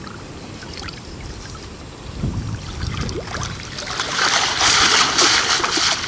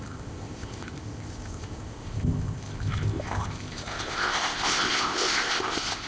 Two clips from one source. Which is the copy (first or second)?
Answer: second